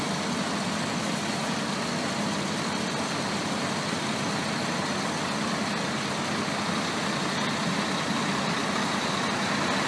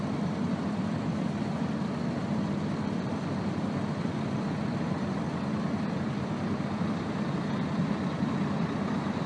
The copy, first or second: second